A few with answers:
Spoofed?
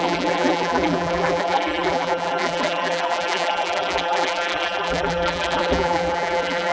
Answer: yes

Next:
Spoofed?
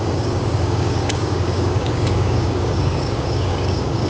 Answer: yes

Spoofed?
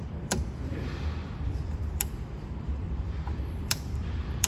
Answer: yes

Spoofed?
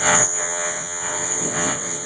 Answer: yes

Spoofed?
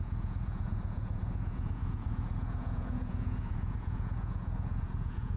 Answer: yes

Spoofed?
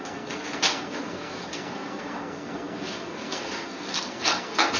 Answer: yes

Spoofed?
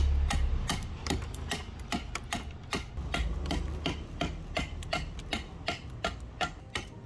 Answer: no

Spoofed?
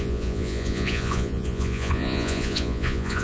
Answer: yes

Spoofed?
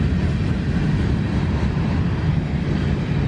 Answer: no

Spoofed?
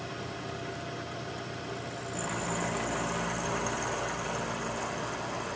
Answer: no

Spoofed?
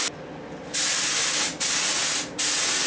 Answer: no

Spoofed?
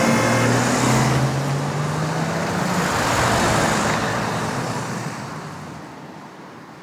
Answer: no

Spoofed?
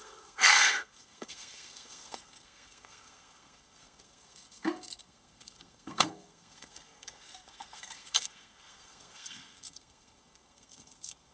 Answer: yes